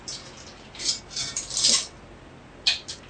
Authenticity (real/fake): real